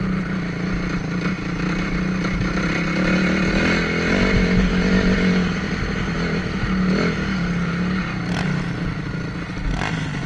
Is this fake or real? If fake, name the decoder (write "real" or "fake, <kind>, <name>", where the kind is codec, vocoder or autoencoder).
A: real